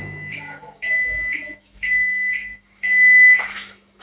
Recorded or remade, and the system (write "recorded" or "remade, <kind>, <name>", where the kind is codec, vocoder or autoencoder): remade, autoencoder, DAC-VAE